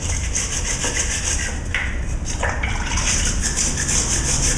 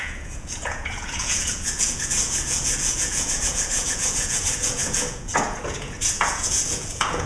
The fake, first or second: second